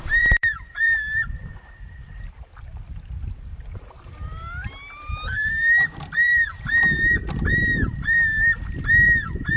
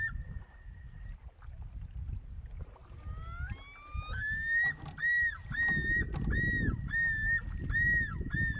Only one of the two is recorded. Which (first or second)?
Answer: second